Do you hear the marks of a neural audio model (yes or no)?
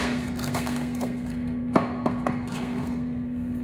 yes